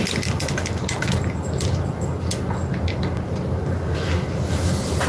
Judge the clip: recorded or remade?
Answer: recorded